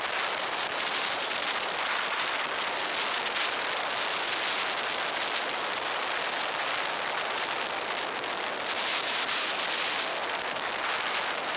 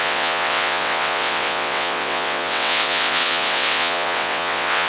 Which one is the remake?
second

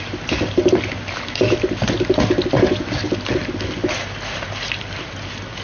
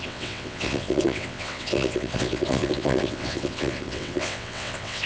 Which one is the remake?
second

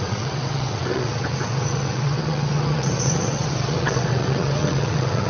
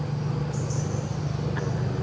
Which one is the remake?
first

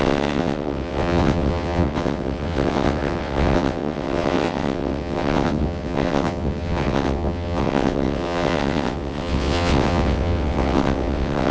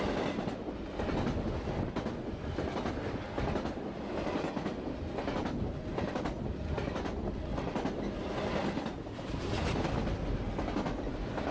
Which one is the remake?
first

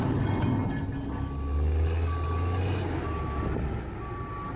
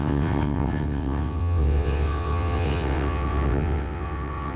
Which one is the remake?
second